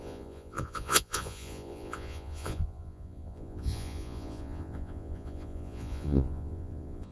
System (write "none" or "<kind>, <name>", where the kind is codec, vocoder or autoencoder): vocoder, Vocos